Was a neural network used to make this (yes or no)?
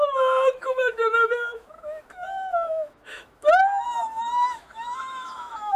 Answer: yes